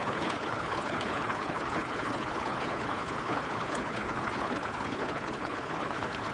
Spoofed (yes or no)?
yes